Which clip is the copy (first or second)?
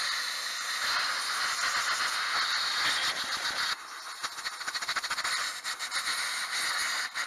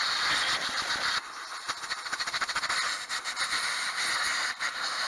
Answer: second